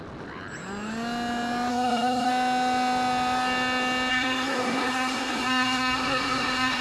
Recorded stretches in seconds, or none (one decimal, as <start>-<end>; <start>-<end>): 0.0-1.7; 2.3-4.1